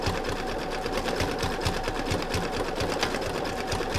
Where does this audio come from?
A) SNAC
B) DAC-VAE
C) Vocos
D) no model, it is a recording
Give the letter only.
D